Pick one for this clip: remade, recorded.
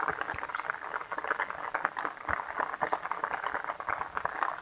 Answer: recorded